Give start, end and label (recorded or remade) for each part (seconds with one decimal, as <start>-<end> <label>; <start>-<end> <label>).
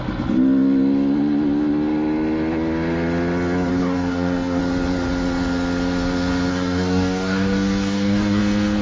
0.0-3.7 recorded; 3.7-4.6 remade; 4.6-6.5 recorded; 6.5-8.4 remade; 8.4-8.8 recorded